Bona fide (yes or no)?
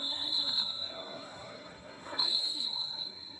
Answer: no